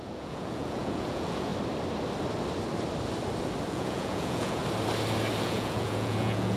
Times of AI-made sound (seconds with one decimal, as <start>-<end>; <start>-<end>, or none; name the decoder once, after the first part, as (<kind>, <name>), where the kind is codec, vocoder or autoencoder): 0.0-1.5 (vocoder, Vocos); 3.7-4.6; 5.4-6.6